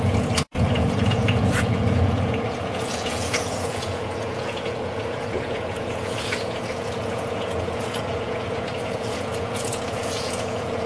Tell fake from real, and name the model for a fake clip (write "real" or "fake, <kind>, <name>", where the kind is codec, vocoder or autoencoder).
fake, vocoder, Vocos